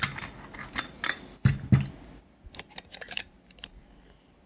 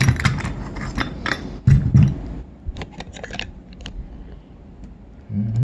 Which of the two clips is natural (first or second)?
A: first